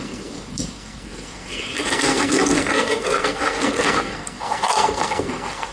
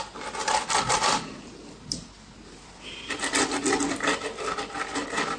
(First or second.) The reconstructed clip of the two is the first